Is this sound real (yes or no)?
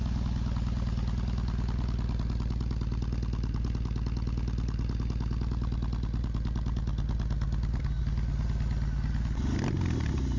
yes